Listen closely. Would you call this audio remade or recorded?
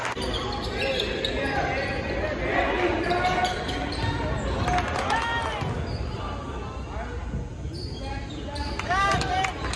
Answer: recorded